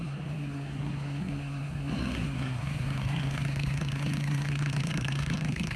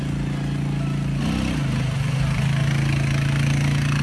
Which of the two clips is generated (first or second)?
first